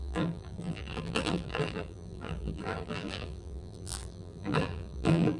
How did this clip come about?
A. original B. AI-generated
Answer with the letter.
B